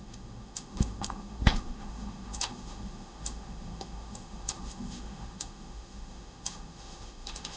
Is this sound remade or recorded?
remade